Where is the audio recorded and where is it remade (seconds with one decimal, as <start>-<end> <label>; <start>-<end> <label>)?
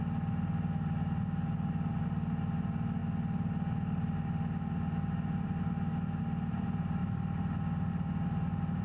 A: 0.0-8.8 recorded